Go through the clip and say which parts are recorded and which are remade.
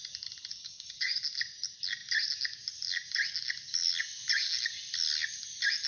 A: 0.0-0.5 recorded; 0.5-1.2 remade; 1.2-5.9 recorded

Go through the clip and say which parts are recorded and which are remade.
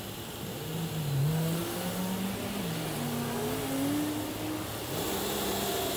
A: 0.0-1.6 remade; 1.6-5.0 recorded; 5.0-6.0 remade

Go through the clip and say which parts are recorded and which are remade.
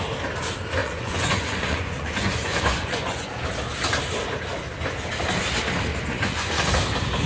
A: 0.0-0.8 recorded; 0.8-3.3 remade; 3.3-5.9 recorded; 5.9-6.6 remade; 6.6-7.3 recorded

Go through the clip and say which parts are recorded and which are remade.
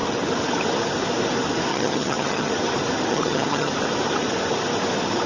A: 0.0-1.7 recorded; 1.7-2.5 remade; 2.5-3.1 recorded; 3.1-3.7 remade; 3.7-5.3 recorded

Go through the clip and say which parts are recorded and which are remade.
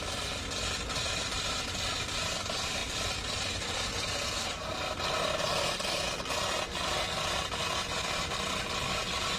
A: 0.0-9.4 recorded